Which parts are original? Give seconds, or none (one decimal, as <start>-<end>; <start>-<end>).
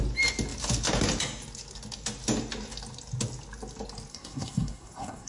0.0-4.1